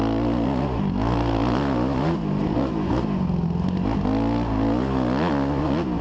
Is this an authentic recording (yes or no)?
yes